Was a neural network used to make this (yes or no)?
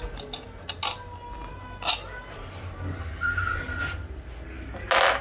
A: no